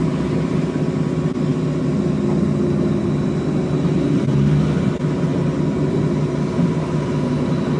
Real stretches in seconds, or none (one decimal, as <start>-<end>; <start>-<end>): 0.0-7.8